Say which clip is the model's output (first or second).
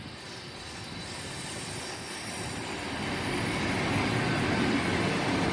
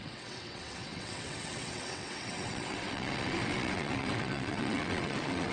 second